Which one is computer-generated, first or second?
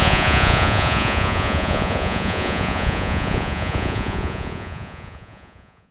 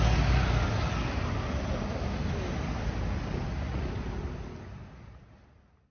first